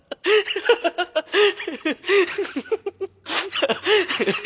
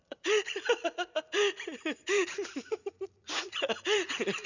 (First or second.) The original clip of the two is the first